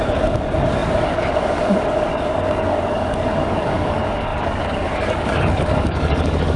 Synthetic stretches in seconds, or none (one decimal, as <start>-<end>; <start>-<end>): 0.0-6.6